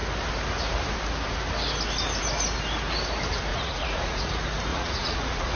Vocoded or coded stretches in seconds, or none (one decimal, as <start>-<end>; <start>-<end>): 3.5-4.3; 4.7-5.6